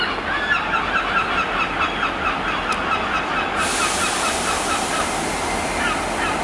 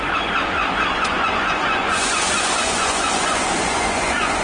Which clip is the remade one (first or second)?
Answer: second